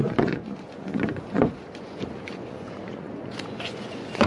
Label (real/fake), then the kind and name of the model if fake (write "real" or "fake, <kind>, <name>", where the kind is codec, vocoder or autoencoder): fake, vocoder, Vocos